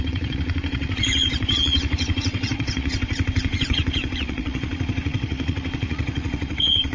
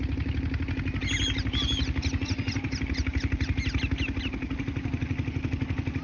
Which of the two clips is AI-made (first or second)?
first